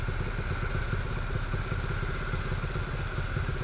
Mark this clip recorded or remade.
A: recorded